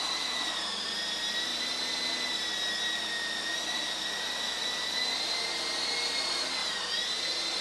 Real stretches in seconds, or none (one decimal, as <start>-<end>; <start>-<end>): 0.0-1.5; 2.3-6.6

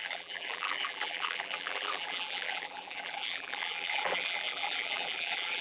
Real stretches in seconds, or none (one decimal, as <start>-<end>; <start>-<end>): none